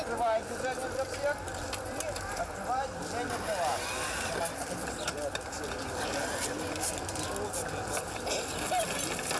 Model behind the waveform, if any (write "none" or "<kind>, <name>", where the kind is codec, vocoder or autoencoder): none